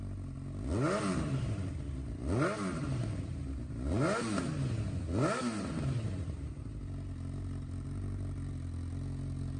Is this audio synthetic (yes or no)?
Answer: no